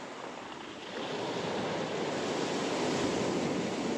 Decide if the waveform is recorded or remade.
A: recorded